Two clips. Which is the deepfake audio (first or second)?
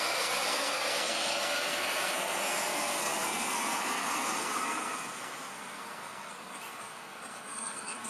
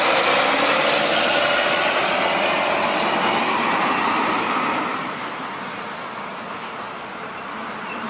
first